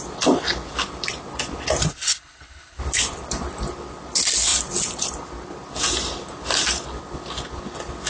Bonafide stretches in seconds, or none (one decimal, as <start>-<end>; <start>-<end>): 0.0-1.9; 2.8-8.1